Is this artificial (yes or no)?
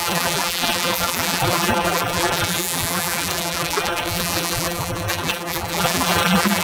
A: yes